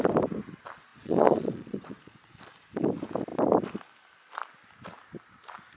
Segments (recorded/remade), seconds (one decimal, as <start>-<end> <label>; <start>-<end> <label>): 0.0-0.9 recorded; 0.9-2.3 remade; 2.3-5.8 recorded